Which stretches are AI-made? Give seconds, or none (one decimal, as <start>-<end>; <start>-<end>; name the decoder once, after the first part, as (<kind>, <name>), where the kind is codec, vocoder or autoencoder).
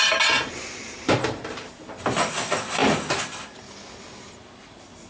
0.8-1.8 (vocoder, BigVGAN v2)